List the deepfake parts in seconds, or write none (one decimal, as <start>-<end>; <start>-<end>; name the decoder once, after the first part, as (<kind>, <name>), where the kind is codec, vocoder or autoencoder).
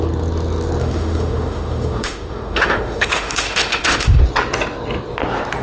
0.8-4.2 (autoencoder, DAC-VAE)